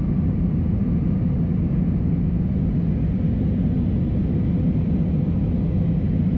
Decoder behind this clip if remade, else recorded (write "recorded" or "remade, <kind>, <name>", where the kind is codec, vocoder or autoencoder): recorded